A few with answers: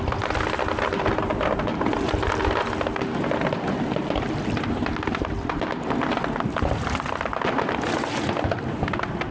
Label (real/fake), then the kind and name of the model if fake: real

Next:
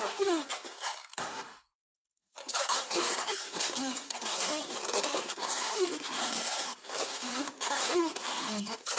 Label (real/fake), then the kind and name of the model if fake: fake, codec, SNAC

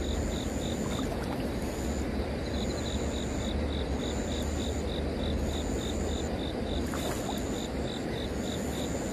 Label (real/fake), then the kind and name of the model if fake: real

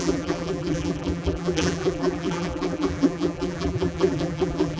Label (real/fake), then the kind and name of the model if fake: fake, vocoder, BigVGAN v2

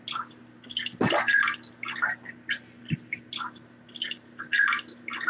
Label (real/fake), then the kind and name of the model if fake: real